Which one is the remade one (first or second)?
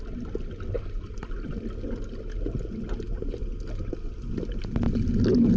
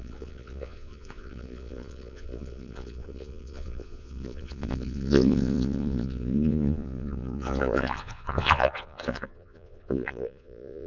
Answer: second